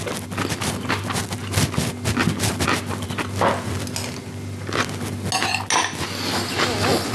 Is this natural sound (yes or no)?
yes